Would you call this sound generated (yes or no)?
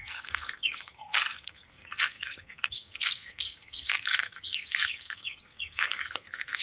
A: yes